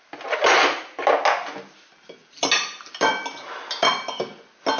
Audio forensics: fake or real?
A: real